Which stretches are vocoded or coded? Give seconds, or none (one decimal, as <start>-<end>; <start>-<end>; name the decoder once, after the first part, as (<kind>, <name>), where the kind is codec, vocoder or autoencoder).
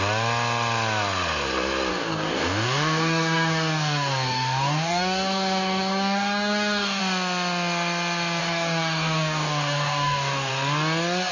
1.9-7.0 (codec, DAC); 8.4-10.5